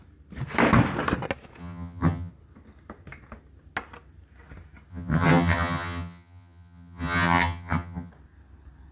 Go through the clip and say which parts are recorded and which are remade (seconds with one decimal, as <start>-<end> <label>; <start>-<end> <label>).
0.0-1.6 recorded; 1.6-2.3 remade; 2.3-4.9 recorded; 4.9-8.1 remade; 8.1-8.9 recorded